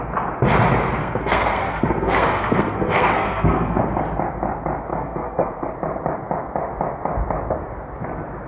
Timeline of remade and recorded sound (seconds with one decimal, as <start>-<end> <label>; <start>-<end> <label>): 0.0-1.0 recorded; 1.0-3.8 remade; 3.8-4.9 recorded; 4.9-5.7 remade; 5.7-8.5 recorded